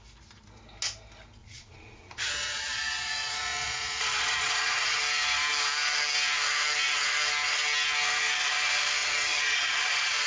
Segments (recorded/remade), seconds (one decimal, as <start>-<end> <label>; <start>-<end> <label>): 0.0-1.4 recorded; 1.4-5.0 remade; 5.0-9.0 recorded; 9.0-10.3 remade